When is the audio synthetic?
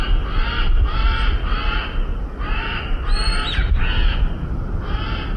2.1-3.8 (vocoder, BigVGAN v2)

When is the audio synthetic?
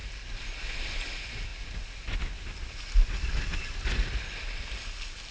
none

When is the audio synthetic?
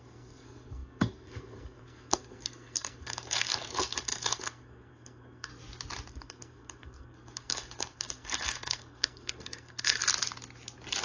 0.0-5.5 (codec, SNAC); 6.1-10.0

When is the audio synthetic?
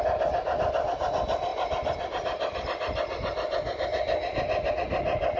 none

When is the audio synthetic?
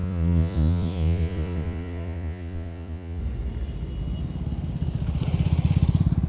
0.0-3.2 (vocoder, Vocos)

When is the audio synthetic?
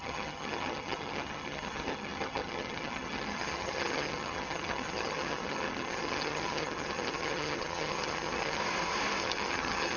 0.0-8.6 (vocoder, HiFi-GAN); 9.2-10.0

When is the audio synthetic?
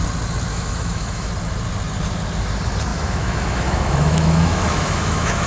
0.5-1.3 (autoencoder, DAC-VAE); 2.9-5.5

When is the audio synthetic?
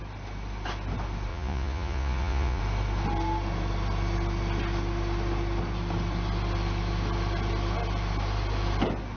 1.3-2.6 (vocoder, Vocos)